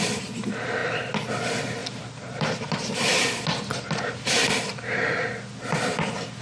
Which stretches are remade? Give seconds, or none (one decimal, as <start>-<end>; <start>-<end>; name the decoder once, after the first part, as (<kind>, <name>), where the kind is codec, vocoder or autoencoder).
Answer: 1.8-3.4 (vocoder, BigVGAN v2)